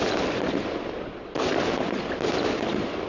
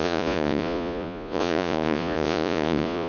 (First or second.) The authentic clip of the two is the first